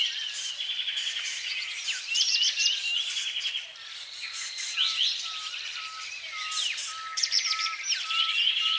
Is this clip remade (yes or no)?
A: no